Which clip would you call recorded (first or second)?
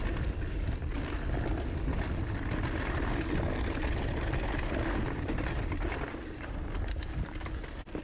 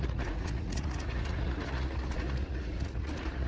first